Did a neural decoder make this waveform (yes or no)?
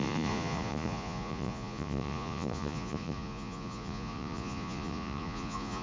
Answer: yes